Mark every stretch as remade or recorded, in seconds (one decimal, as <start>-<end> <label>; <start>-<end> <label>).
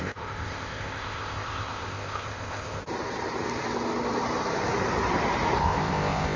0.0-2.8 remade; 2.8-5.6 recorded; 5.6-6.4 remade